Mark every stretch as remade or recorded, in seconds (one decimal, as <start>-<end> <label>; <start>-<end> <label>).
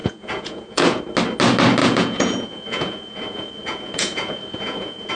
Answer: 0.0-1.0 remade; 1.0-1.8 recorded; 1.8-5.1 remade